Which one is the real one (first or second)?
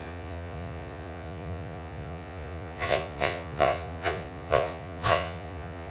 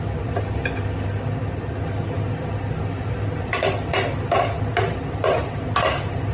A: second